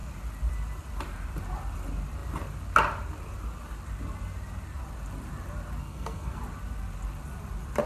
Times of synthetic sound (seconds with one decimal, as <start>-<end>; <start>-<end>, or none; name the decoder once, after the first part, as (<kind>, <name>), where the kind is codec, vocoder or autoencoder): 5.8-6.4 (codec, SNAC)